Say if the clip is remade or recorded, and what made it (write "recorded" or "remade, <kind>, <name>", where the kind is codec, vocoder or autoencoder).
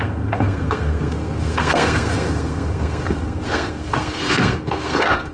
remade, codec, SNAC